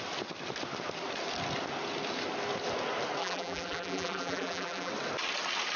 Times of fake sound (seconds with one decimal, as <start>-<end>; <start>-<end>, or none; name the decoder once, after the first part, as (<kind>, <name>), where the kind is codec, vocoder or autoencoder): 3.2-4.9 (vocoder, BigVGAN v2)